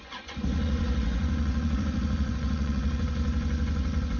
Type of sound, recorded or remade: remade